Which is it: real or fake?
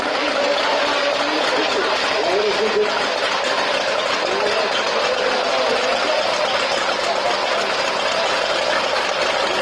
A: real